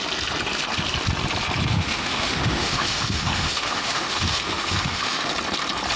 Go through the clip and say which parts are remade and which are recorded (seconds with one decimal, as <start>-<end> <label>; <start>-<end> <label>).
0.0-1.7 recorded; 1.7-5.3 remade; 5.3-6.0 recorded